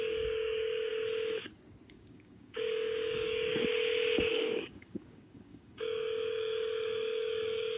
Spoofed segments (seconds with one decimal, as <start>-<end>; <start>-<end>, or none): 0.0-0.9; 1.9-3.5; 4.3-7.8